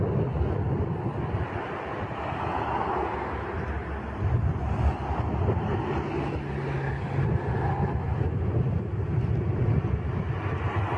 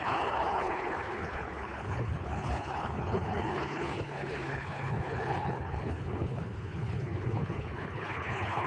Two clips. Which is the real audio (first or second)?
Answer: first